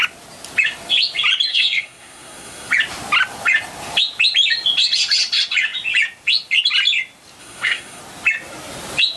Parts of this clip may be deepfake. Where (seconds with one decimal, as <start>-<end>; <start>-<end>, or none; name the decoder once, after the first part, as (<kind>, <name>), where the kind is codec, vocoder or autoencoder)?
1.5-2.7 (codec, SNAC); 7.4-8.0

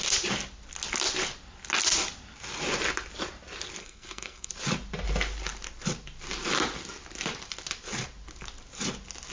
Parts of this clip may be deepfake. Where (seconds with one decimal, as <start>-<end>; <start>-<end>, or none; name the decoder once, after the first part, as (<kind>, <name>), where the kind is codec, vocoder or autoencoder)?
3.8-4.5 (codec, SNAC)

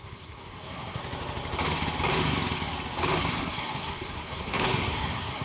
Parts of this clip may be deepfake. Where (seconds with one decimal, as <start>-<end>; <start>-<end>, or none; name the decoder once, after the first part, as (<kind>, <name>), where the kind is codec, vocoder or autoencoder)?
0.0-1.0 (codec, SNAC); 3.2-5.4

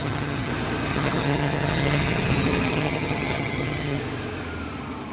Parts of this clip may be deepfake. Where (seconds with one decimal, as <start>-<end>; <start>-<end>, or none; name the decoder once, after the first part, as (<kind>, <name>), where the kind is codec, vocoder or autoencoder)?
0.0-0.5 (vocoder, HiFi-GAN); 0.9-4.0

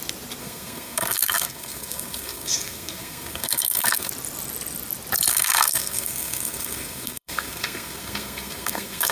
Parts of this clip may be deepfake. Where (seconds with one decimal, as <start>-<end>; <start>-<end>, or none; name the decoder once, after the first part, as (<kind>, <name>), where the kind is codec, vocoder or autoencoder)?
0.4-4.1 (codec, SNAC); 5.3-9.1

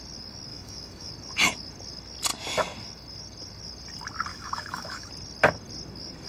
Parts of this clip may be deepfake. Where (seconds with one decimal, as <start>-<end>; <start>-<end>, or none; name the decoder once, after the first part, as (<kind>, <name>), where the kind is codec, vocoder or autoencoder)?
0.5-1.1 (autoencoder, DAC-VAE); 4.3-5.1

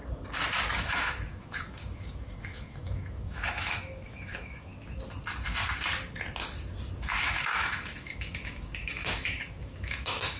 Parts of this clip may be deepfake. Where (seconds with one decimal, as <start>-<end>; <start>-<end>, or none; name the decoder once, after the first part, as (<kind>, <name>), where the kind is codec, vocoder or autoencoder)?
0.8-4.7 (autoencoder, DAC-VAE); 7.1-10.4